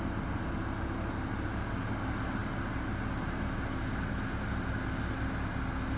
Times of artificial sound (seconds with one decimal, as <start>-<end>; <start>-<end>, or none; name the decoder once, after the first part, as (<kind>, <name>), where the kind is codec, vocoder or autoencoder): none